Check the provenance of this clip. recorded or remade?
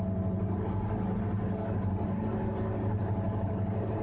recorded